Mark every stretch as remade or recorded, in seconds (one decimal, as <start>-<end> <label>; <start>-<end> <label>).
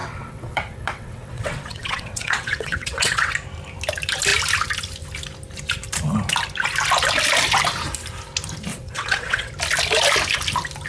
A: 0.0-3.3 remade; 3.3-8.7 recorded; 8.7-9.5 remade; 9.5-10.9 recorded